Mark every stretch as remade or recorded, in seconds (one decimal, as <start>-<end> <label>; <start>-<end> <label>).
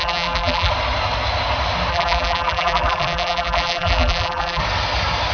0.0-0.7 remade; 0.7-1.9 recorded; 1.9-4.6 remade; 4.6-5.3 recorded